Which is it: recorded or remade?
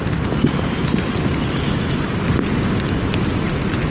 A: recorded